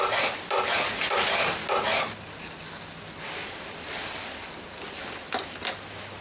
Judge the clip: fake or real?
real